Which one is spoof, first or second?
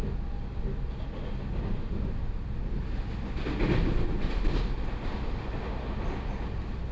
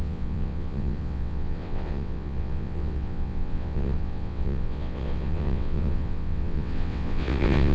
second